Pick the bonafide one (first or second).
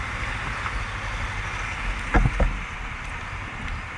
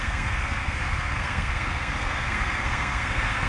first